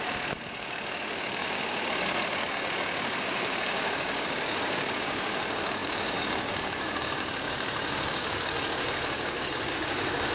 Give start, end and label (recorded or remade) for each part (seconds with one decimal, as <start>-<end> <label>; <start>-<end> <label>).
0.0-10.3 remade